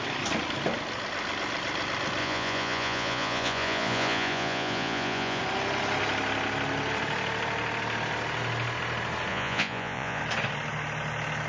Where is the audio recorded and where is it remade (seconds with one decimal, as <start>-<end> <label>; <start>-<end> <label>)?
0.0-2.2 recorded; 2.2-5.4 remade; 5.4-9.3 recorded; 9.3-10.2 remade; 10.2-11.5 recorded